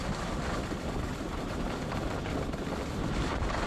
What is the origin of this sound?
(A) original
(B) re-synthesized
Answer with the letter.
A